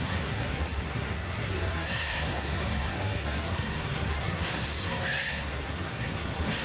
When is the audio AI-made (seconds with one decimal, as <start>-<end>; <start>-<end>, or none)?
0.0-6.6